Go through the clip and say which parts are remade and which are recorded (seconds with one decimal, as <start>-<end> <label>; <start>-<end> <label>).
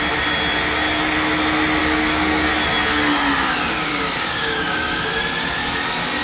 0.0-1.8 recorded; 1.8-2.5 remade; 2.5-3.9 recorded; 3.9-5.1 remade; 5.1-6.2 recorded